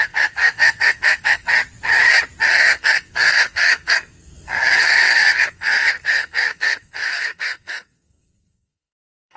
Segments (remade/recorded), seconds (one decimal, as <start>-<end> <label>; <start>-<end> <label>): 0.0-1.5 remade; 1.5-2.5 recorded; 2.5-9.4 remade